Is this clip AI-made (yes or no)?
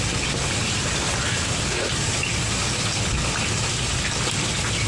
no